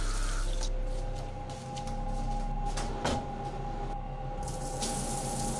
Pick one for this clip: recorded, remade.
recorded